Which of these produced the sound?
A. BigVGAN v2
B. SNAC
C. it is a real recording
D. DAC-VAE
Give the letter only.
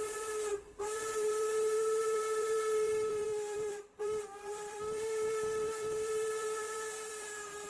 A